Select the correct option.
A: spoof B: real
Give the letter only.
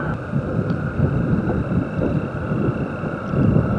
B